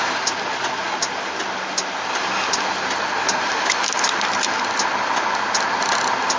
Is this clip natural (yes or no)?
yes